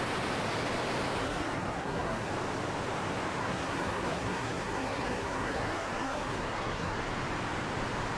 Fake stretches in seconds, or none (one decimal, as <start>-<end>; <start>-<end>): 1.2-2.3; 3.4-7.0